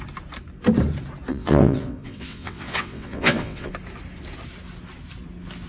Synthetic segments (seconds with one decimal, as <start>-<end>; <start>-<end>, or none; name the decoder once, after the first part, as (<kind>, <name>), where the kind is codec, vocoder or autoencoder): 1.3-3.7 (vocoder, WaveNeXt)